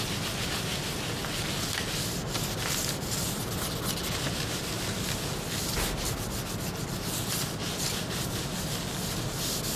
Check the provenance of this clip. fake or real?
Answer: real